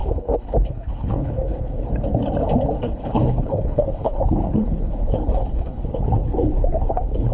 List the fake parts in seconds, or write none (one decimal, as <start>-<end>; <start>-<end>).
0.0-1.9; 2.8-7.3